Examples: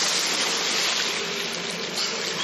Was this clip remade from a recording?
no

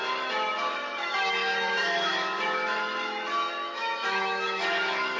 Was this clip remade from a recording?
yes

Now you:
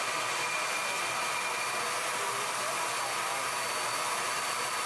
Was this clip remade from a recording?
no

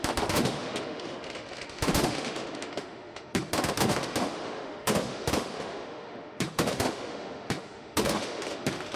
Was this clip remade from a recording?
yes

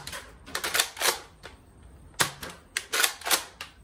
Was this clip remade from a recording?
no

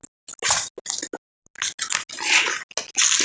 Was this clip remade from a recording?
no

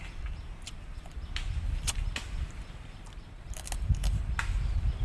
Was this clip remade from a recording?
no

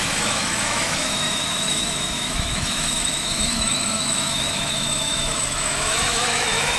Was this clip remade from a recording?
yes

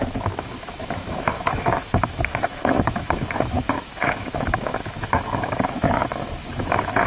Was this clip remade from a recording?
yes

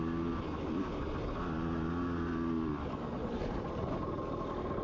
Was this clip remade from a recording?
no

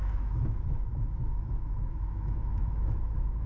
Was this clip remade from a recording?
yes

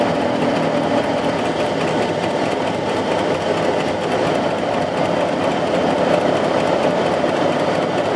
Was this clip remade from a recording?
no